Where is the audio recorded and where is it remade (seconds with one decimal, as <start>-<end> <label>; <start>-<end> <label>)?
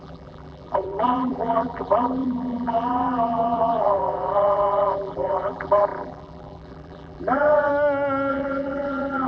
0.0-7.7 remade; 7.7-8.3 recorded; 8.3-9.3 remade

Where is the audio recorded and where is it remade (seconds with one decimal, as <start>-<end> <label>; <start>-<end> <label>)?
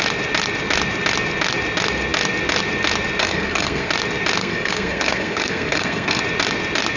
0.0-3.2 recorded; 3.2-3.9 remade; 3.9-4.4 recorded; 4.4-6.2 remade; 6.2-7.0 recorded